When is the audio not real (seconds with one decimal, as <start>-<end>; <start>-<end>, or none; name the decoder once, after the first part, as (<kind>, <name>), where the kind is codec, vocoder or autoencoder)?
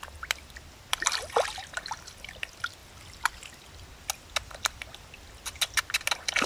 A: none